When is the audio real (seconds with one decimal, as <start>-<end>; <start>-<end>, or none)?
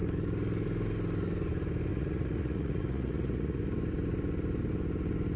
0.0-1.9; 3.6-5.4